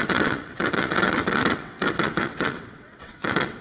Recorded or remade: remade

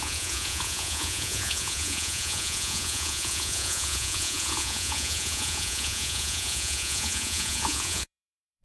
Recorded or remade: remade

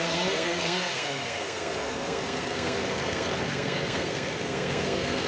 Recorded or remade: remade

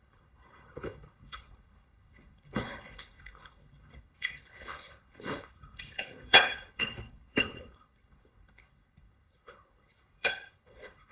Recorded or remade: remade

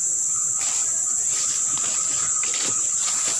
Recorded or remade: recorded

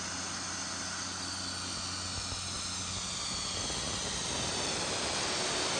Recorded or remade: recorded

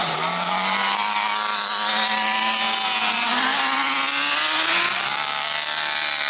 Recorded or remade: recorded